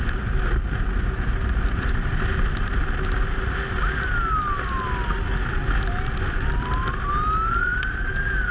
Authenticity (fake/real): real